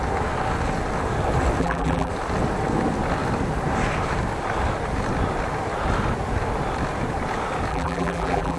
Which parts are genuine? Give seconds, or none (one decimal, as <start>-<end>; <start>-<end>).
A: 0.0-1.6; 2.1-7.7